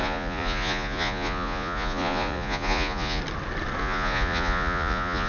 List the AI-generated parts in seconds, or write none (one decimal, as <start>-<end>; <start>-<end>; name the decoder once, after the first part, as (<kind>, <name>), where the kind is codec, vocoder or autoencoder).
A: 0.0-3.2 (vocoder, Vocos); 3.8-5.3